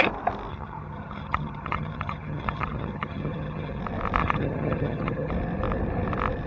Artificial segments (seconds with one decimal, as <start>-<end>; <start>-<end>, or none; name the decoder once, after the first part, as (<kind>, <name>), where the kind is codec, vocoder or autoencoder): 0.5-3.8 (vocoder, HiFi-GAN); 4.2-5.3